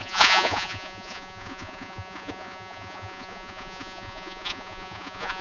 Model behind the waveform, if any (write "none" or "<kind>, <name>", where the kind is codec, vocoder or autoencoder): vocoder, Vocos